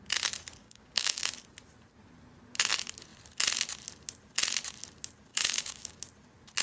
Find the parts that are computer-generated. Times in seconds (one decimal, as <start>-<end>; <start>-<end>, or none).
0.6-1.2; 5.3-6.0

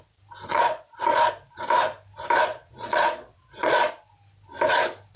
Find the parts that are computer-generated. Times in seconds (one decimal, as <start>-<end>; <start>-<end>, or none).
0.5-1.3; 2.5-3.9

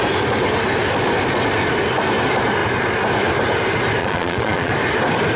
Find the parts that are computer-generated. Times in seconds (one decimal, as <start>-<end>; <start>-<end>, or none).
4.0-4.7

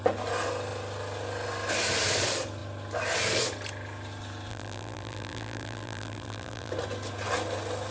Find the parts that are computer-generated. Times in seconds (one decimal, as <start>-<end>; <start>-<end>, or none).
4.5-6.7

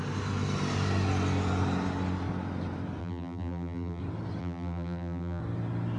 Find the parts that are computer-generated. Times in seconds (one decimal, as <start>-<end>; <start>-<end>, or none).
3.0-4.0; 4.4-5.4

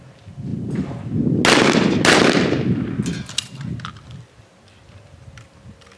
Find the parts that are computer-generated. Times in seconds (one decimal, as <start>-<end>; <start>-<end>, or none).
none